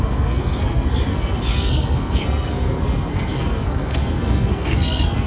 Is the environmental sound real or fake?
fake